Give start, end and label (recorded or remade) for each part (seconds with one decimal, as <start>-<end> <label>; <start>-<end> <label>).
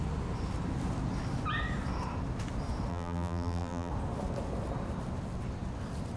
0.0-2.9 recorded; 2.9-3.9 remade; 3.9-6.2 recorded